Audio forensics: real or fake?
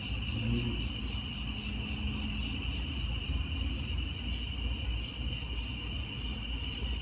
real